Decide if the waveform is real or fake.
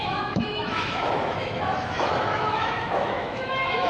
fake